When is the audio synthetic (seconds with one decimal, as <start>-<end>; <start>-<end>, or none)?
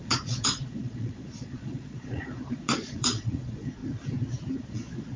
0.0-3.8; 4.6-5.2